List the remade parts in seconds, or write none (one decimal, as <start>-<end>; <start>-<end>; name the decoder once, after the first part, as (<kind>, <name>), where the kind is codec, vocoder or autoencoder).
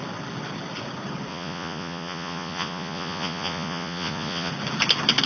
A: 1.3-4.5 (vocoder, Vocos)